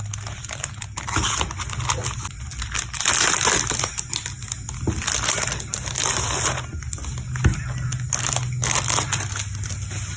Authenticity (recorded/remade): recorded